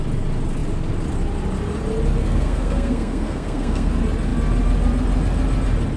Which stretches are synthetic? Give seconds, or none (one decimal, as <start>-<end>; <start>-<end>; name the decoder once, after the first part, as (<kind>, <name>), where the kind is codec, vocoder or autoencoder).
2.2-3.9 (codec, SNAC)